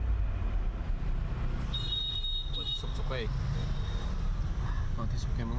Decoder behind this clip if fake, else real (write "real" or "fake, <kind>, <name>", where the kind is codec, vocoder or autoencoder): real